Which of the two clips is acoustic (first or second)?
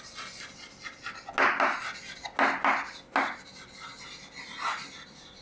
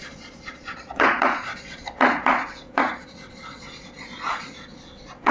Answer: first